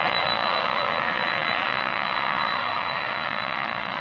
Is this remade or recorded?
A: remade